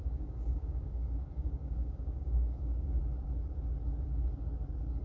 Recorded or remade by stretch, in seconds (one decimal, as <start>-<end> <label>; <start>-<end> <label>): 0.0-3.0 remade; 3.0-5.0 recorded